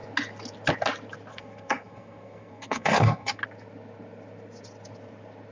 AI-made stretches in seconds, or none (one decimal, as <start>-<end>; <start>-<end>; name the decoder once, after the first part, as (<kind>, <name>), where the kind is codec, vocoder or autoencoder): 1.3-3.4 (codec, SNAC)